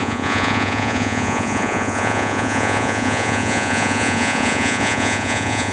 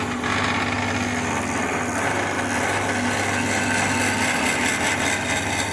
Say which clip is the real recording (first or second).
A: second